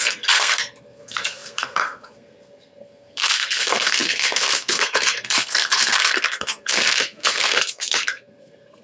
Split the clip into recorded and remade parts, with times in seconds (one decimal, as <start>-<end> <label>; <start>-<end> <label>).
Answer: 0.0-8.8 remade

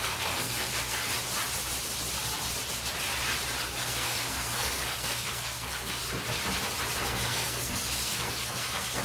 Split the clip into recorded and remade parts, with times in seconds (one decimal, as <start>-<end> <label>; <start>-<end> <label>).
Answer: 0.0-1.0 remade; 1.0-3.8 recorded; 3.8-6.0 remade; 6.0-7.0 recorded; 7.0-9.0 remade

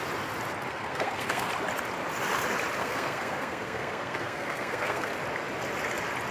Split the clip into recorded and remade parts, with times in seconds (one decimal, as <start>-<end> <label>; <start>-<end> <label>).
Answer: 0.0-0.7 recorded; 0.7-1.5 remade; 1.5-2.8 recorded; 2.8-5.1 remade; 5.1-6.3 recorded

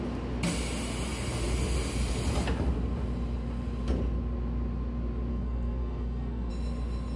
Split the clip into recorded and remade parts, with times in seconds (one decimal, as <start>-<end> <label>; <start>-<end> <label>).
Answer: 0.0-5.3 recorded; 5.3-6.5 remade; 6.5-7.2 recorded